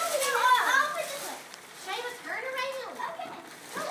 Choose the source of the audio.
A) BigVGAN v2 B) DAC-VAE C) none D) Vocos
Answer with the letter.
C